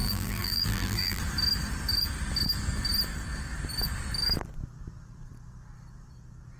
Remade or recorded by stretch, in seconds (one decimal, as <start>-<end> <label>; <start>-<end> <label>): 0.0-1.2 remade; 1.2-6.6 recorded